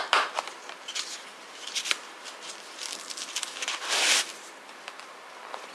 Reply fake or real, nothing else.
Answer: fake